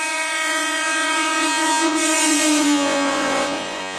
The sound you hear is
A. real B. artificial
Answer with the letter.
B